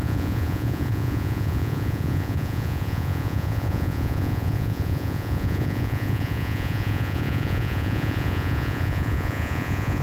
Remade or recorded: remade